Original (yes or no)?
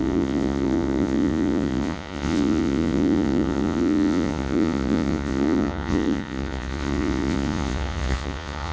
no